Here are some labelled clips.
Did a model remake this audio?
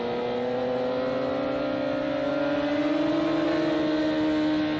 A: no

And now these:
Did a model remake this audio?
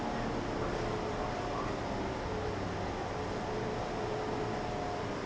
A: no